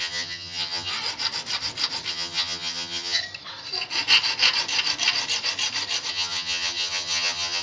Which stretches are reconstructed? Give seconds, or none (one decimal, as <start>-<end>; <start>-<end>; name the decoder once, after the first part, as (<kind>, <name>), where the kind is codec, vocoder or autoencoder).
0.0-0.9 (vocoder, HiFi-GAN); 2.1-3.2; 6.1-7.6